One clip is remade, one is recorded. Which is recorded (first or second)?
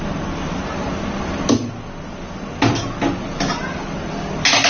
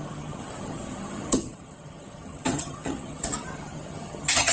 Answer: first